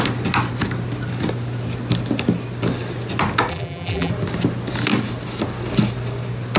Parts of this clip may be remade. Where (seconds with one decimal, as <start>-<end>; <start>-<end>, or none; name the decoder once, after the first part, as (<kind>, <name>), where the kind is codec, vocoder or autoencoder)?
3.5-4.1 (vocoder, BigVGAN v2)